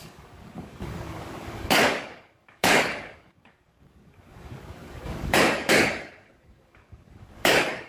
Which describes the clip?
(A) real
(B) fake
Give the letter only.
B